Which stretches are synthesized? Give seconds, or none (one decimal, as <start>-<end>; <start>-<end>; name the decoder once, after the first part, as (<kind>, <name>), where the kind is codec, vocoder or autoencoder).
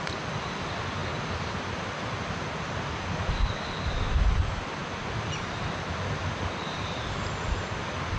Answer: none